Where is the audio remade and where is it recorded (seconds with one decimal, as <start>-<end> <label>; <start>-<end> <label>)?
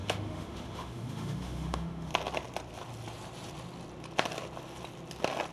0.0-2.1 remade; 2.1-5.5 recorded